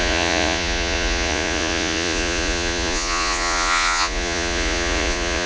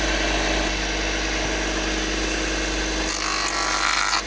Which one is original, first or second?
second